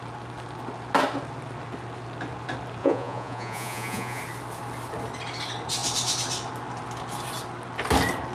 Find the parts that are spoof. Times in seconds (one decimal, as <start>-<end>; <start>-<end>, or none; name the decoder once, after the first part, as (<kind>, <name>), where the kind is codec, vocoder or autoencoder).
2.8-4.2 (vocoder, Vocos)